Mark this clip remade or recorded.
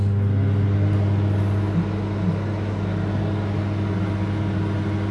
recorded